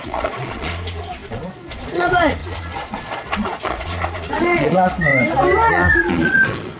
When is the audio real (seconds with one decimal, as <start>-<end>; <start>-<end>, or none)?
5.1-5.7

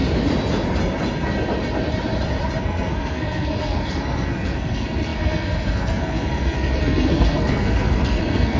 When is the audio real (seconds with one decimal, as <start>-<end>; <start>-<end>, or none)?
0.0-2.6

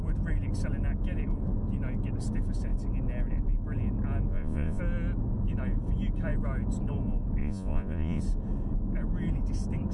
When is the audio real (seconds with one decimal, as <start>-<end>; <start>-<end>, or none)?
0.0-4.3; 4.8-7.4; 8.2-9.9

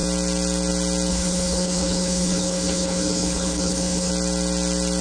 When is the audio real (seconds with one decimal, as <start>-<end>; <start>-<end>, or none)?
0.0-1.1; 4.1-5.0